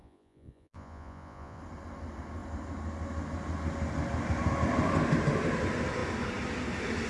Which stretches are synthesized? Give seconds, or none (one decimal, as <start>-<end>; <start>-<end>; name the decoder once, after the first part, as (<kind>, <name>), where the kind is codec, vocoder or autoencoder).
0.0-1.6 (vocoder, Vocos)